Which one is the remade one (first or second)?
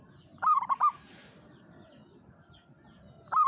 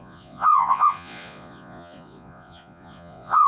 second